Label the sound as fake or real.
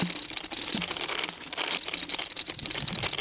real